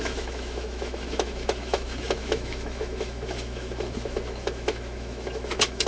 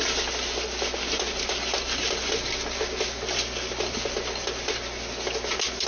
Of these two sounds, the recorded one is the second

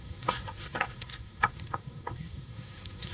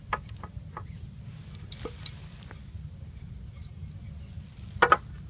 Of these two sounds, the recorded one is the second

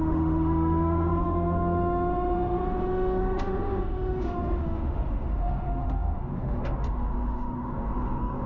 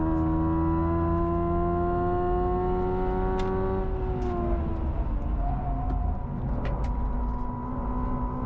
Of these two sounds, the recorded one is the second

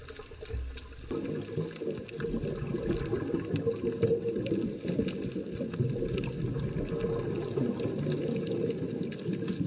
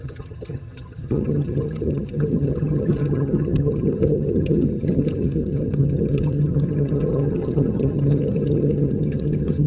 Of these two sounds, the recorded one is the first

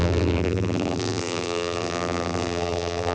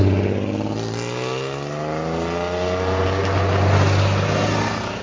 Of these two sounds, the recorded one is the second